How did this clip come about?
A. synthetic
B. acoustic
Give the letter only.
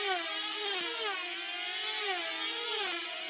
B